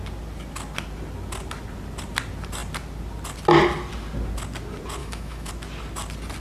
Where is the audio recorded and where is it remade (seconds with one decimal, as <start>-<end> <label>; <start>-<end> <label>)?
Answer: 0.0-5.0 recorded; 5.0-5.5 remade; 5.5-6.4 recorded